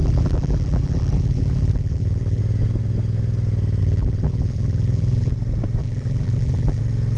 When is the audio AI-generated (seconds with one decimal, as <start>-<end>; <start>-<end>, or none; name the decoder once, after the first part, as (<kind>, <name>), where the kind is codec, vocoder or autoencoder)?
0.0-2.4 (vocoder, BigVGAN v2); 3.8-5.3; 5.8-6.8